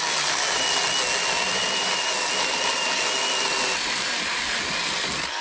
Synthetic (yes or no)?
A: no